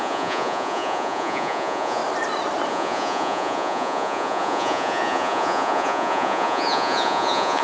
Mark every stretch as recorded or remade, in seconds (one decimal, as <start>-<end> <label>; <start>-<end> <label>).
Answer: 0.0-2.0 remade; 2.0-2.7 recorded; 2.7-7.6 remade